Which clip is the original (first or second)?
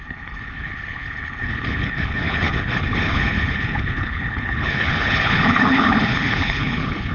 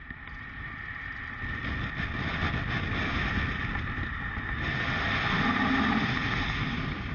second